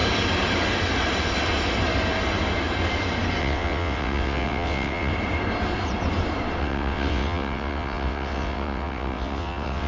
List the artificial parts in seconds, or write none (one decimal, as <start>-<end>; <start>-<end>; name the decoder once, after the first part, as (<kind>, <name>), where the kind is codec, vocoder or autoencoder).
3.4-5.1 (vocoder, WaveNeXt); 6.6-9.9